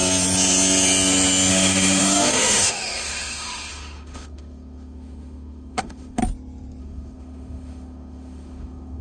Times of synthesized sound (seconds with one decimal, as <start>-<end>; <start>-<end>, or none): 1.5-6.2; 6.8-9.0